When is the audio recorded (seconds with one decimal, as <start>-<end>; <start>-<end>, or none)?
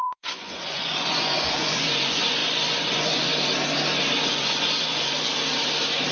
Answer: 3.3-4.3; 5.3-6.1